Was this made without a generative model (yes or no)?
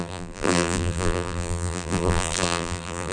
no